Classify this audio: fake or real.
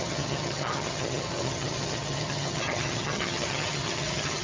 fake